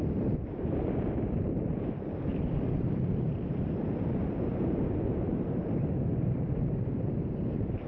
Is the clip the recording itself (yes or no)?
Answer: no